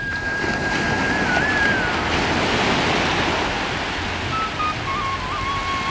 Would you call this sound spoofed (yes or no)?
no